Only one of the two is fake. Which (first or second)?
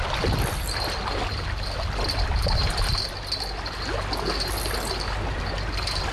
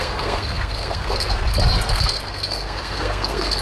second